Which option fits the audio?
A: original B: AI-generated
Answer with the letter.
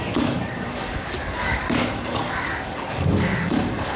B